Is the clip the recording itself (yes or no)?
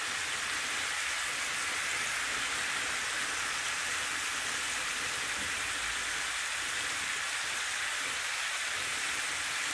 yes